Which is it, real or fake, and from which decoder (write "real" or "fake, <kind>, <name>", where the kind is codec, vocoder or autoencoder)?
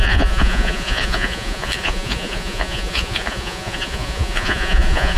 fake, vocoder, Vocos